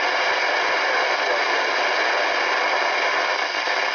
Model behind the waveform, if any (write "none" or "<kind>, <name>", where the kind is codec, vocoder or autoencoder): none